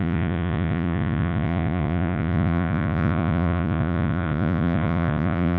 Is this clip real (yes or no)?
no